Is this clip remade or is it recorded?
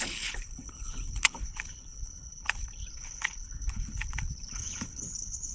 remade